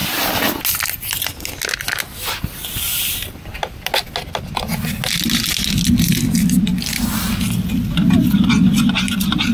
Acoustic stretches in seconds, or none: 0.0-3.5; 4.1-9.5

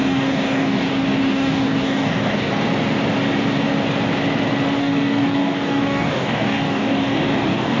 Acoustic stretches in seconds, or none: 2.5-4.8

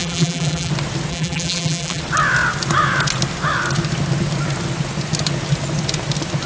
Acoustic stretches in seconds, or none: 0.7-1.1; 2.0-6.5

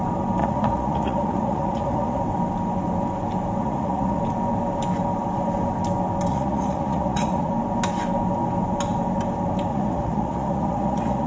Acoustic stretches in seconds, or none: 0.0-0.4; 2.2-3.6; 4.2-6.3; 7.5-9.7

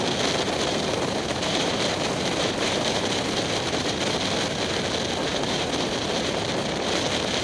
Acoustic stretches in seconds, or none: 0.0-0.7; 4.0-5.3; 6.1-7.4

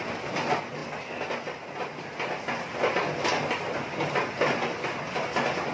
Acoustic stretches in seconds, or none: 0.0-5.7

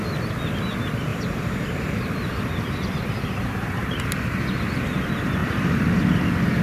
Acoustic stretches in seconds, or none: 0.0-1.1; 3.5-5.4

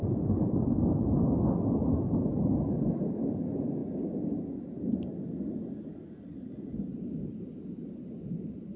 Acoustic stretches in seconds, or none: 0.0-8.8